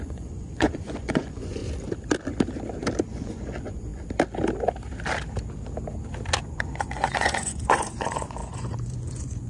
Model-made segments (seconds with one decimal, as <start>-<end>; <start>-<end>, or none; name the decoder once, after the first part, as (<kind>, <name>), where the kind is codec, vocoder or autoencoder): 0.0-1.6 (vocoder, Vocos); 3.1-3.9; 6.5-9.5